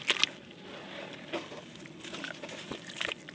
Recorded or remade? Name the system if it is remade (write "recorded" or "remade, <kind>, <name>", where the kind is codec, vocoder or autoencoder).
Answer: recorded